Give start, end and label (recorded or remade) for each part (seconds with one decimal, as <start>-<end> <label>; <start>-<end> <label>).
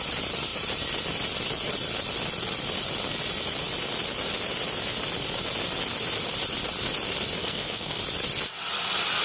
0.0-7.4 recorded; 7.4-8.0 remade; 8.0-9.2 recorded